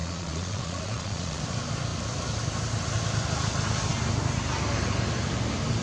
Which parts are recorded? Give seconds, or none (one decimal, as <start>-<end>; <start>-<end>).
1.4-5.8